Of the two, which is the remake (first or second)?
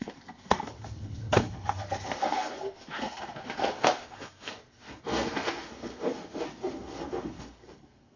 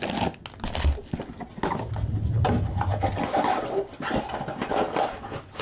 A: first